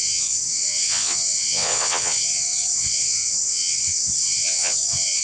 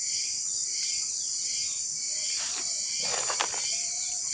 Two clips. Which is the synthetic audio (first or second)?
first